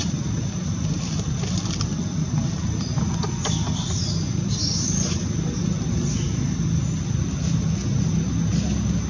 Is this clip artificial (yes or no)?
no